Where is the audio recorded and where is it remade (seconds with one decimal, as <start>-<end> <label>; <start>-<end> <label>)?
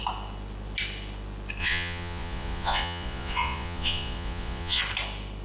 0.0-1.6 recorded; 1.6-4.8 remade; 4.8-5.4 recorded